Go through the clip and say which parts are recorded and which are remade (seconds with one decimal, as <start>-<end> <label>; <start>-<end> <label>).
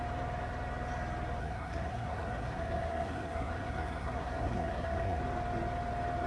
0.0-1.4 recorded; 1.4-5.2 remade; 5.2-6.3 recorded